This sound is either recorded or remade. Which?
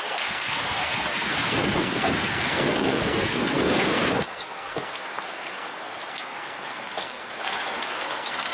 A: remade